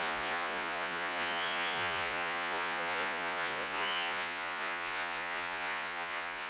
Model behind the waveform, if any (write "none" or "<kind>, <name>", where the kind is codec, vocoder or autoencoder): vocoder, Vocos